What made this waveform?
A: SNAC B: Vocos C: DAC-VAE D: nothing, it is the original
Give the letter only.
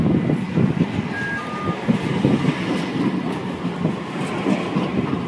D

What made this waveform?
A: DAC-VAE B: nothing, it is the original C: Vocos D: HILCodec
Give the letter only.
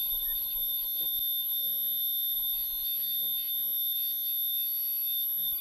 B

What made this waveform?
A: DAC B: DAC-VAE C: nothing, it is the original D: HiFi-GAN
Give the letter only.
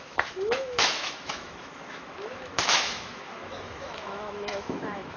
B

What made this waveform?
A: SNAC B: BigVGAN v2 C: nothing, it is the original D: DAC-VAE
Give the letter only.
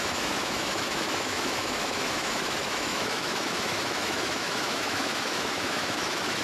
D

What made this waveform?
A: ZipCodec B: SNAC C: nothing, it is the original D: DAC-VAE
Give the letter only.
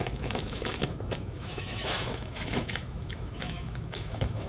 D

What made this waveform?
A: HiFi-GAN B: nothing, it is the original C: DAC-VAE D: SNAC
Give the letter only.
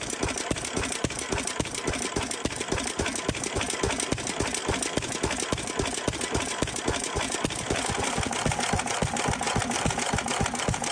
B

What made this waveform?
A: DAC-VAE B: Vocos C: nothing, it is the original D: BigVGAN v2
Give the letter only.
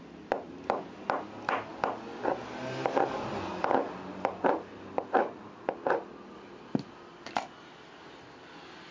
C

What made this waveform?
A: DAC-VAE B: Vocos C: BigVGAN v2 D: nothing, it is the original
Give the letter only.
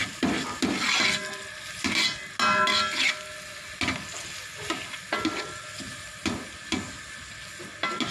D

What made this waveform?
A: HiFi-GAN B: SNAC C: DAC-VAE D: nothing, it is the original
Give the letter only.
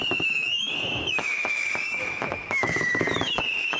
C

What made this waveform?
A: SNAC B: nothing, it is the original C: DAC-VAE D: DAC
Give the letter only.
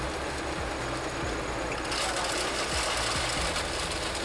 B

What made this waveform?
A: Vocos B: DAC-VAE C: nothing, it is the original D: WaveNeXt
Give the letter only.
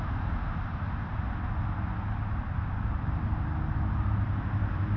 C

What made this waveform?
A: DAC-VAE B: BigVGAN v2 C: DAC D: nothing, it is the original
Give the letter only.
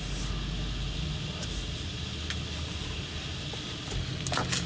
D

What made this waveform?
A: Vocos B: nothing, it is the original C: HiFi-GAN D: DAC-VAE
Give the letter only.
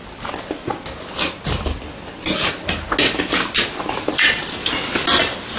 B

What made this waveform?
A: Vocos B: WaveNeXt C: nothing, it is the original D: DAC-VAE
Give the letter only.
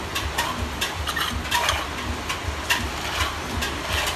C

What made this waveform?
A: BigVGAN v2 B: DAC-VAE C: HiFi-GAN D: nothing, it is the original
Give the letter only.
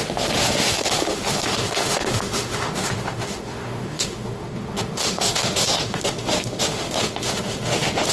B